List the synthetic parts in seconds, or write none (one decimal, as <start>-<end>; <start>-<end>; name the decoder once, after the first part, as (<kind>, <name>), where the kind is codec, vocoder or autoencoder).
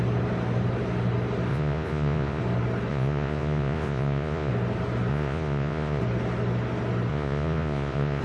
1.5-2.4 (vocoder, Vocos); 2.9-4.5; 5.1-6.0; 7.1-8.2